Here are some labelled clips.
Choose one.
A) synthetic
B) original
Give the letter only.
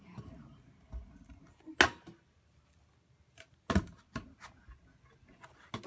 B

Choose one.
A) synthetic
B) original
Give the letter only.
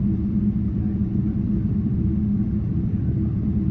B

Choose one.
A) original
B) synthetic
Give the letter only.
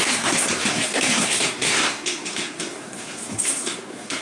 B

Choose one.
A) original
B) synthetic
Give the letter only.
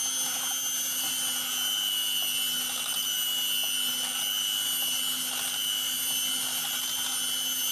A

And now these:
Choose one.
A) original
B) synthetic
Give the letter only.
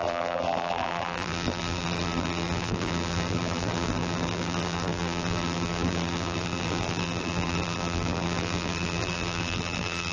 B